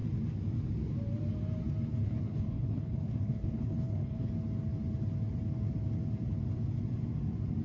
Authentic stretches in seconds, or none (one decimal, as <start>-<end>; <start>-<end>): 0.0-2.0; 4.3-7.6